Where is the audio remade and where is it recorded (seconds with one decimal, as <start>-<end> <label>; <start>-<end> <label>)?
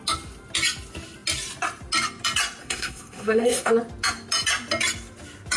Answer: 0.0-2.6 recorded; 2.6-3.7 remade; 3.7-5.6 recorded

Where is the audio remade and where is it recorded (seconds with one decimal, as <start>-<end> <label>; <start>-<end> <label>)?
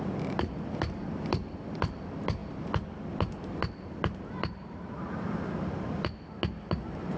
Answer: 0.0-7.2 recorded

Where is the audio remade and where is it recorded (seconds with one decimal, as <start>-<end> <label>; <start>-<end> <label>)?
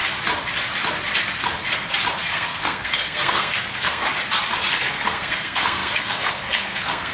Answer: 0.0-2.1 recorded; 2.1-4.0 remade; 4.0-4.7 recorded; 4.7-7.1 remade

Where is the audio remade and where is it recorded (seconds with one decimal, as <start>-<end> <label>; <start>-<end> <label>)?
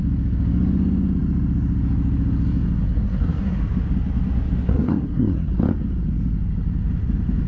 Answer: 0.0-2.8 recorded; 2.8-3.6 remade; 3.6-4.7 recorded; 4.7-5.5 remade; 5.5-7.5 recorded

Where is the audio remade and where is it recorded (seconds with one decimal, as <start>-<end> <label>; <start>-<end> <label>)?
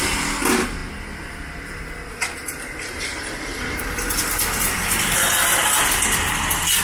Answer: 0.0-6.8 recorded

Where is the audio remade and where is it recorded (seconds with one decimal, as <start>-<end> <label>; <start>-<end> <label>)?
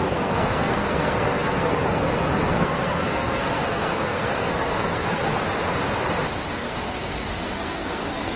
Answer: 0.0-5.3 remade; 5.3-6.5 recorded; 6.5-8.4 remade